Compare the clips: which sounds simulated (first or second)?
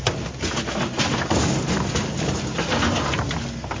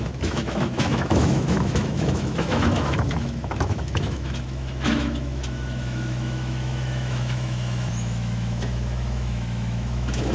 second